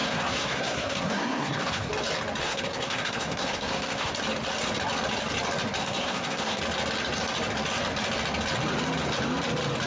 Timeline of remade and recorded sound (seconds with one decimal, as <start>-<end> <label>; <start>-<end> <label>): 0.0-1.9 remade; 1.9-2.4 recorded; 2.4-4.1 remade; 4.1-5.8 recorded; 5.8-6.6 remade; 6.6-9.9 recorded